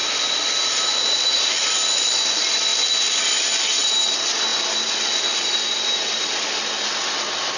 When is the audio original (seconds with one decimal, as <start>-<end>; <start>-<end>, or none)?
0.0-7.6